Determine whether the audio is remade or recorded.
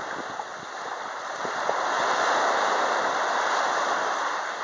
recorded